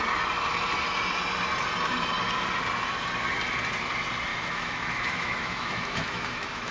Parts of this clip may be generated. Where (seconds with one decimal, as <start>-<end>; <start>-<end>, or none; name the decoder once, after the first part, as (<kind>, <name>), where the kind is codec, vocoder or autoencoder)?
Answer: 4.3-6.7 (autoencoder, DAC-VAE)